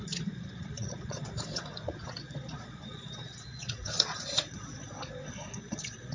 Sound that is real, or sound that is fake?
fake